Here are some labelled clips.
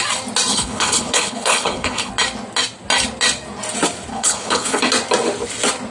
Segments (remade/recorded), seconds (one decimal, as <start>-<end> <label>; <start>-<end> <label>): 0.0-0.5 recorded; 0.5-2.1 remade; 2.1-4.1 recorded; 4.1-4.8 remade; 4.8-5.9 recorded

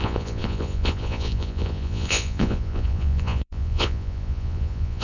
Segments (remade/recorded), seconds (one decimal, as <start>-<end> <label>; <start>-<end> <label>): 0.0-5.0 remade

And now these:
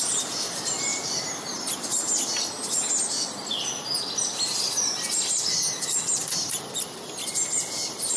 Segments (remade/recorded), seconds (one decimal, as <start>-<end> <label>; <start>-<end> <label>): 0.0-2.3 remade; 2.3-4.6 recorded; 4.6-8.2 remade

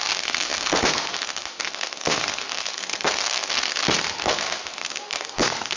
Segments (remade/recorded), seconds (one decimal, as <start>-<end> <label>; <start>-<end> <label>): 0.0-5.8 remade